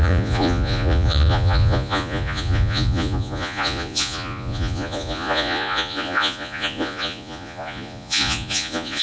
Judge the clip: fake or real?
fake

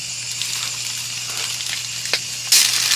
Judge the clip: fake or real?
real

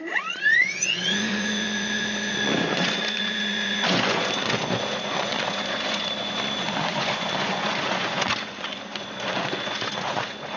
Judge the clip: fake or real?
fake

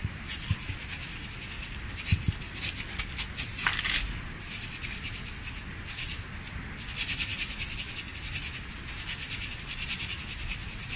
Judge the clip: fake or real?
real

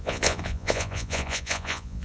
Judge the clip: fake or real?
fake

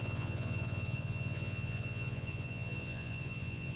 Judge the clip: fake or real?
fake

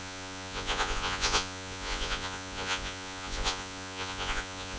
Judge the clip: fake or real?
fake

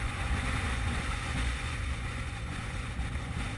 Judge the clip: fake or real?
fake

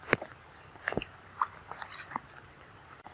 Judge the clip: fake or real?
real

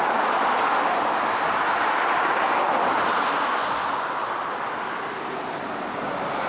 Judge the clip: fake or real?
real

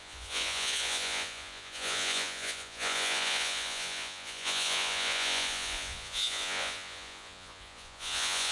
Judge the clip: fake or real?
fake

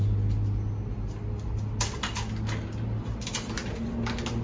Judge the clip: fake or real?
real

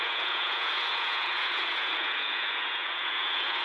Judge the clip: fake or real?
fake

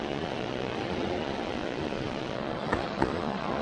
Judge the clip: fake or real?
fake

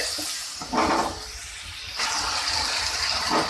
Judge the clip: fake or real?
real